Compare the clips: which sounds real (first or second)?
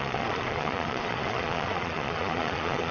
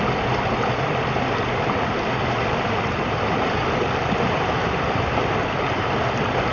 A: second